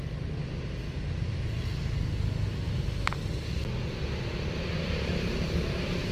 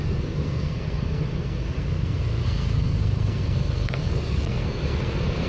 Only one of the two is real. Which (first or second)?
first